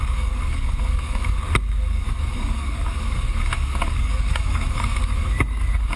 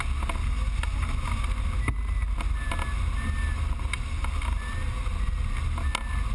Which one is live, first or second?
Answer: second